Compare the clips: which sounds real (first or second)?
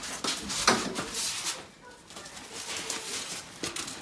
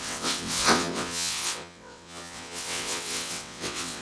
first